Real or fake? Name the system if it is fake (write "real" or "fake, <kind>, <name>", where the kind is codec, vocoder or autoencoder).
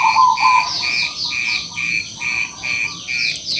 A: real